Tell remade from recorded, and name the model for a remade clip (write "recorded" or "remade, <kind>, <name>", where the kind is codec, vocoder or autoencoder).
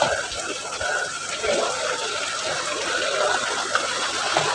recorded